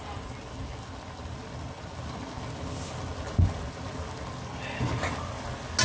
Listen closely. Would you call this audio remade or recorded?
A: recorded